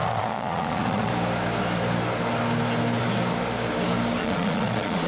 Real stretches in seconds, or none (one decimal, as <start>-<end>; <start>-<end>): 1.1-4.2